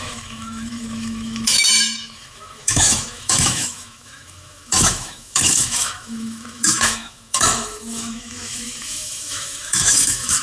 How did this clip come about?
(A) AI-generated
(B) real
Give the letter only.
A